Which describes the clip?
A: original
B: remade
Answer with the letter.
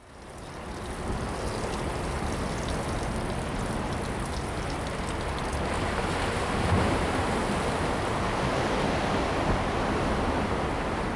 A